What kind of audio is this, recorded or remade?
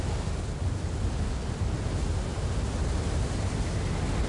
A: recorded